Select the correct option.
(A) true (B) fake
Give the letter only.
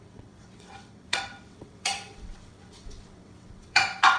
B